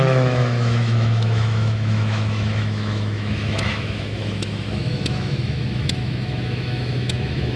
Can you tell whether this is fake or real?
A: fake